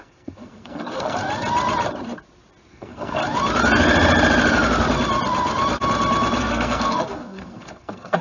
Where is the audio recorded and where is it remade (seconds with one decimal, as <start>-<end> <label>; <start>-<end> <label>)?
0.0-1.2 remade; 1.2-2.7 recorded; 2.7-3.2 remade; 3.2-6.4 recorded; 6.4-8.2 remade